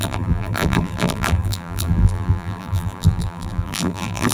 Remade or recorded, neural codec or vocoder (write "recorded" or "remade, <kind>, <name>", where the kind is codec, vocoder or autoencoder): remade, vocoder, BigVGAN v2